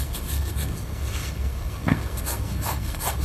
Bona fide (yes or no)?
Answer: no